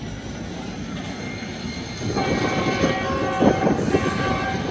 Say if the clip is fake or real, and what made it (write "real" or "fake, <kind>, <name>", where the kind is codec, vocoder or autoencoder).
real